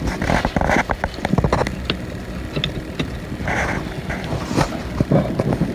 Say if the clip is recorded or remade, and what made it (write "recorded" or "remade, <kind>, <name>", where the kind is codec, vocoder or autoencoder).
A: recorded